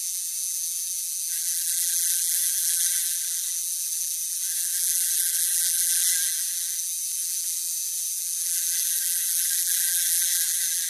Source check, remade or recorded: remade